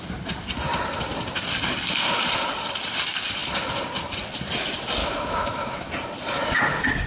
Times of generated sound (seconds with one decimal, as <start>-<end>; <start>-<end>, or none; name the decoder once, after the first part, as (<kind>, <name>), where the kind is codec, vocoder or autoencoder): 5.0-5.9 (autoencoder, DAC-VAE)